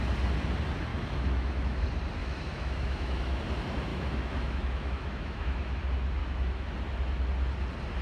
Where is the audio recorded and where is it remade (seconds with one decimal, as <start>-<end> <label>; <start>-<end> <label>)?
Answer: 0.0-0.9 recorded; 0.9-1.8 remade; 1.8-2.2 recorded; 2.2-3.4 remade; 3.4-3.9 recorded; 3.9-5.8 remade; 5.8-6.2 recorded; 6.2-6.7 remade; 6.7-8.0 recorded